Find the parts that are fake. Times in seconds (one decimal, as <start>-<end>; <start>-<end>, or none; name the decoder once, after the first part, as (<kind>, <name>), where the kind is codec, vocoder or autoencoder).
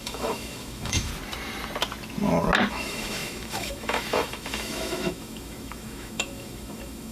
0.0-1.1 (autoencoder, DAC-VAE); 2.7-7.1